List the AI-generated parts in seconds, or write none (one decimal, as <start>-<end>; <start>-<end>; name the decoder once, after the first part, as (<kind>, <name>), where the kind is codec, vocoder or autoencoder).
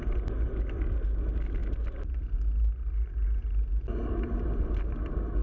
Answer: none